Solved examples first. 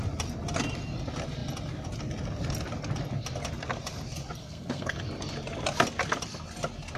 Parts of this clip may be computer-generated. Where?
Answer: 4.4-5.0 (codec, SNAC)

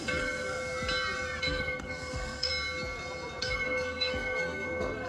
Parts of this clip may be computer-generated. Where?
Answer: 0.0-0.6 (codec, SNAC); 1.4-2.5; 3.4-5.1

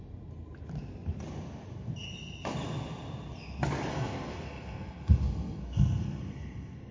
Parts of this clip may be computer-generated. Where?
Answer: 3.9-6.9 (codec, SNAC)

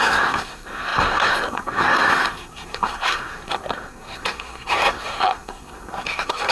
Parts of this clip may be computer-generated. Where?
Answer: 0.0-6.5 (codec, SNAC)

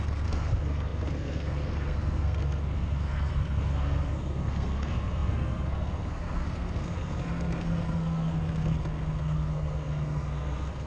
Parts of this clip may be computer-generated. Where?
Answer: 0.0-10.9 (codec, SNAC)

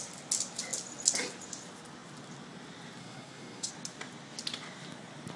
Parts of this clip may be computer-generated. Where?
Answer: 3.0-3.7 (codec, SNAC)

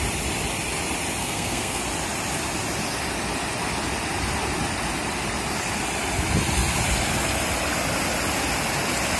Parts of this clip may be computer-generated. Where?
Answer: 1.2-1.8 (codec, SNAC)